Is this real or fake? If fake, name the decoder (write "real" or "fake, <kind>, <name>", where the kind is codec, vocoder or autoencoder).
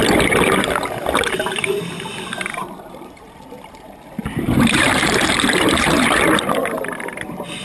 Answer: fake, vocoder, BigVGAN v2